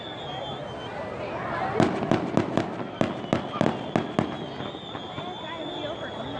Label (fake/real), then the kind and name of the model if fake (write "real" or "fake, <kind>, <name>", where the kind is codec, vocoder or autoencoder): real